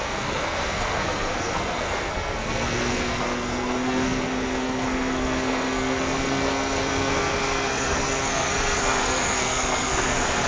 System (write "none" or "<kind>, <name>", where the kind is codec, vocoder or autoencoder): codec, SNAC